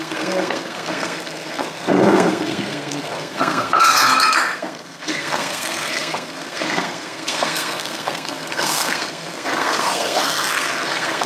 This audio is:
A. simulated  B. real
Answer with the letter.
A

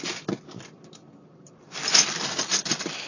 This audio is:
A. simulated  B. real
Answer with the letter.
B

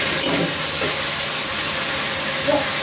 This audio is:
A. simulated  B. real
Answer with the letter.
B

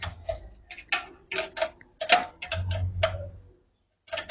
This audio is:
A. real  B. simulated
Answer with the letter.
A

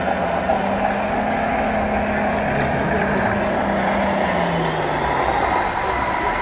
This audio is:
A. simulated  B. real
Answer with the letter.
B